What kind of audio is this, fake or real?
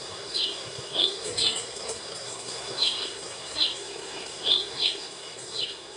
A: fake